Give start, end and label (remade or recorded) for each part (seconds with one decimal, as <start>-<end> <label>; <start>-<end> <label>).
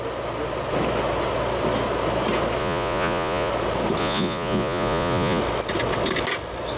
0.0-2.6 recorded; 2.6-3.5 remade; 3.5-4.0 recorded; 4.0-5.4 remade; 5.4-6.8 recorded